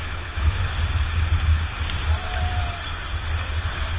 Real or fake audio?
real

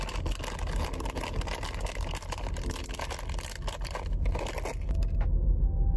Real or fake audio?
real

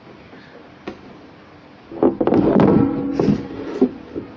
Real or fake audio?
real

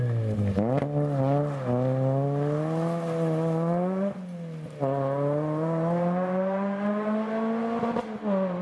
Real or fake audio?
real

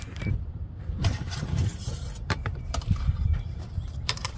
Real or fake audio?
fake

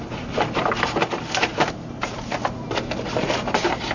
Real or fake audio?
fake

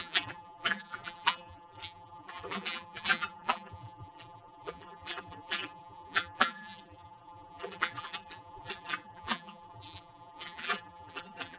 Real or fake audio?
fake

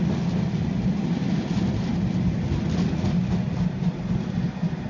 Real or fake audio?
real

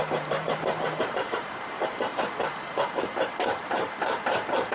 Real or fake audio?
fake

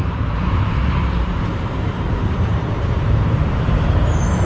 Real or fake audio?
fake